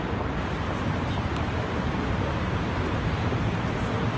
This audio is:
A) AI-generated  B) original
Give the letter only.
A